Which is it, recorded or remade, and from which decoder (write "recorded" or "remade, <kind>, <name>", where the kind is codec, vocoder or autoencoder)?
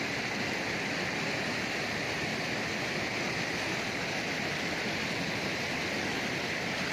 recorded